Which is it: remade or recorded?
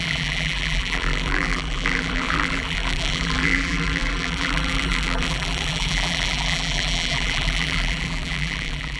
remade